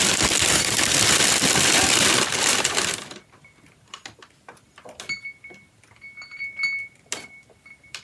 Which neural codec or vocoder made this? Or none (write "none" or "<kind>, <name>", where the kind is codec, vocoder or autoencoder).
none